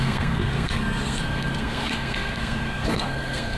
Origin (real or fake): fake